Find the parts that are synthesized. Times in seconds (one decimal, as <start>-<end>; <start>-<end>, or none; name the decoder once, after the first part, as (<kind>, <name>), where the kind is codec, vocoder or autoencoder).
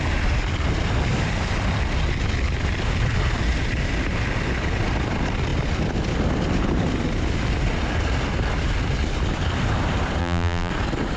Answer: 10.2-10.7 (vocoder, BigVGAN v2)